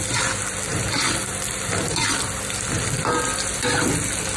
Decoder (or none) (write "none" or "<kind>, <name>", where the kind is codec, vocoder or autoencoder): none